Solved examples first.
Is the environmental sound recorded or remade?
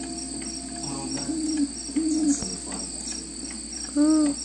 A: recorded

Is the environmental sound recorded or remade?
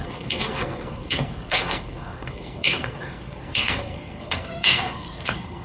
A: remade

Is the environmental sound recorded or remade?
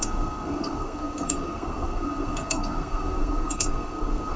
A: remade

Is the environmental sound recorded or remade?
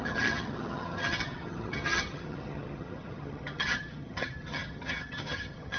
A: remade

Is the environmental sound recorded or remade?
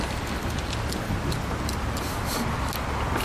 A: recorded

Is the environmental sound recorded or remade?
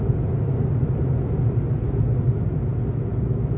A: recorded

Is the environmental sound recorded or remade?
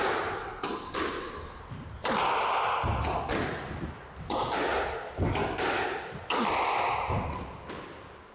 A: recorded